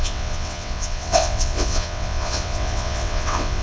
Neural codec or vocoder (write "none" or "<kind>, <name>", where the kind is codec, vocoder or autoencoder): vocoder, WaveNeXt